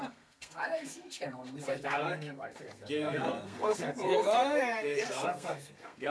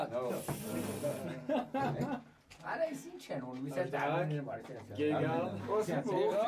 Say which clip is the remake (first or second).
first